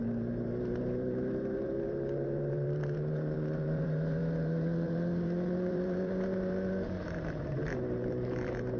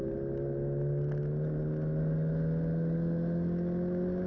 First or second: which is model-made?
first